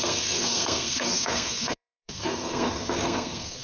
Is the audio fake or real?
fake